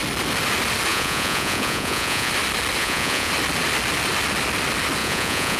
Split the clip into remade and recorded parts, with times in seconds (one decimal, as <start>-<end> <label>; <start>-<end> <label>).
0.0-0.9 recorded; 0.9-2.3 remade; 2.3-2.8 recorded; 2.8-3.3 remade; 3.3-5.0 recorded; 5.0-5.6 remade